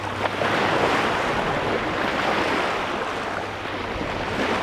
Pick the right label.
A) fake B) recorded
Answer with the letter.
B